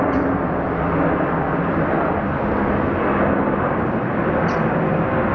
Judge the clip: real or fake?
real